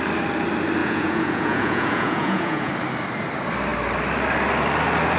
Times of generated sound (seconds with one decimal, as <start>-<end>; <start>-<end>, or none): 0.8-2.7